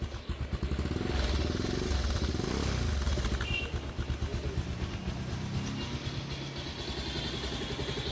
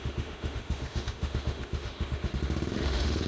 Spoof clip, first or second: second